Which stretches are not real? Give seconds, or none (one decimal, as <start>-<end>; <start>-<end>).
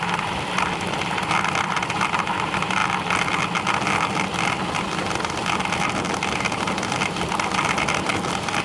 0.0-2.8; 6.9-8.6